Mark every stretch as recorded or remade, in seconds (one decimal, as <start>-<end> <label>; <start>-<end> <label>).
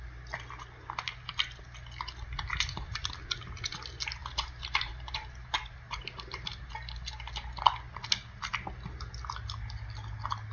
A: 0.0-2.5 recorded; 2.5-3.1 remade; 3.1-4.2 recorded; 4.2-6.6 remade; 6.6-10.5 recorded